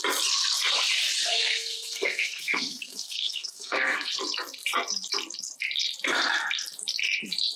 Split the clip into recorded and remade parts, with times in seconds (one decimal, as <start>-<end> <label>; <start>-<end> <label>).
0.0-1.3 recorded; 1.3-4.1 remade; 4.1-7.6 recorded